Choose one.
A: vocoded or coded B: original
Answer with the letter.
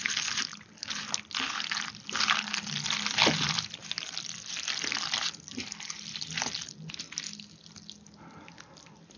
B